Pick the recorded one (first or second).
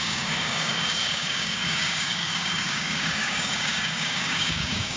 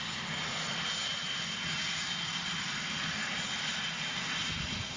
second